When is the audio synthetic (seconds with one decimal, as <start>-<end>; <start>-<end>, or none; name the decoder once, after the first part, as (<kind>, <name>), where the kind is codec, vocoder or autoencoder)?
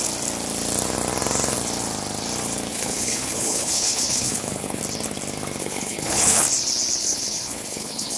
2.7-4.8 (codec, HILCodec); 5.6-6.4; 7.0-8.2